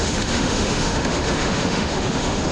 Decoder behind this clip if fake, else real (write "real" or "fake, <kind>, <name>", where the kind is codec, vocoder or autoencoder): fake, autoencoder, DAC-VAE